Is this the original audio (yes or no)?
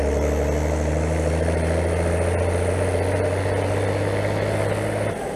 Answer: yes